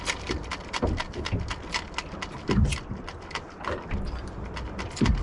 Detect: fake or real real